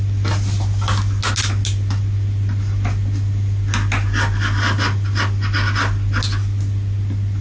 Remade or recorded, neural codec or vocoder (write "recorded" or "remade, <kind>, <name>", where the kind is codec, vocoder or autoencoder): recorded